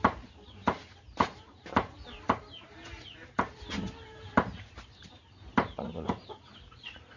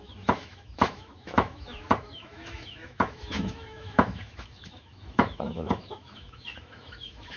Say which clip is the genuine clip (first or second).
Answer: first